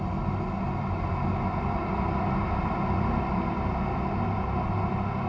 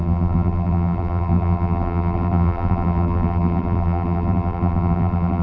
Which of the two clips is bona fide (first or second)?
first